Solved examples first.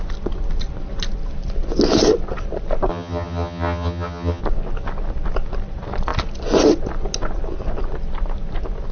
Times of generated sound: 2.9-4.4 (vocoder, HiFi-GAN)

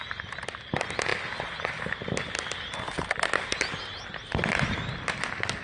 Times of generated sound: none